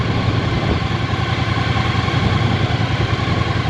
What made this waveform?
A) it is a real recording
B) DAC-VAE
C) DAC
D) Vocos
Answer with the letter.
A